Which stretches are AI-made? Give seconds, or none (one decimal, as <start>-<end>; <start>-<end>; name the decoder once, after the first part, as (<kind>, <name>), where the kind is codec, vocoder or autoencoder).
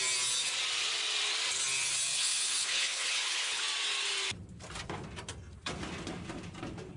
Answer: 2.1-3.6 (codec, HILCodec)